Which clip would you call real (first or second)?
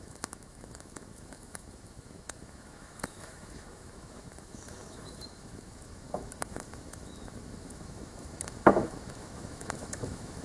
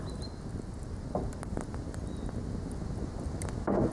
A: second